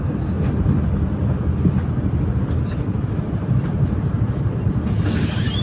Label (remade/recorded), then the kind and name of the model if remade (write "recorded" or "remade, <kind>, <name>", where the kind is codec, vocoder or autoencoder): recorded